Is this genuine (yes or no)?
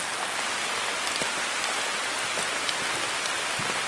yes